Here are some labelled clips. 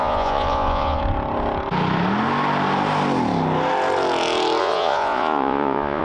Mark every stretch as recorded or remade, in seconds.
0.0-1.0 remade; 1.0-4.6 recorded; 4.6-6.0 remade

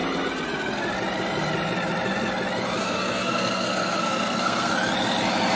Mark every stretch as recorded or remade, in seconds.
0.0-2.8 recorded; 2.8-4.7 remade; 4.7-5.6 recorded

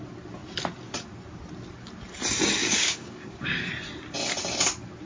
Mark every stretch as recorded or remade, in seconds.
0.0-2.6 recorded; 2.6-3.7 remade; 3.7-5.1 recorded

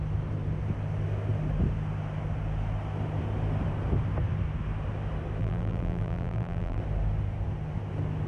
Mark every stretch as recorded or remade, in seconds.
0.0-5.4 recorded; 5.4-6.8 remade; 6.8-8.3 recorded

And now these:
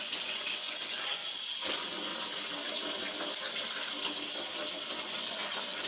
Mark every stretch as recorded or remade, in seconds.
0.0-1.2 remade; 1.2-1.7 recorded; 1.7-2.1 remade; 2.1-4.9 recorded; 4.9-5.9 remade

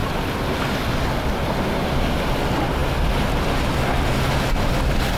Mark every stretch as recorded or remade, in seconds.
0.0-5.2 recorded

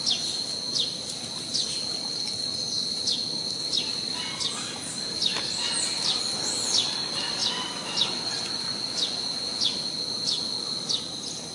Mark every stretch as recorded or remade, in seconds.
0.0-7.4 recorded; 7.4-9.6 remade; 9.6-11.5 recorded

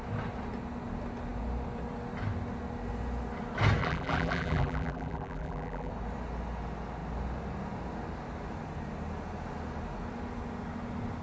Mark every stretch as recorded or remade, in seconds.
0.0-3.8 recorded; 3.8-5.9 remade; 5.9-11.2 recorded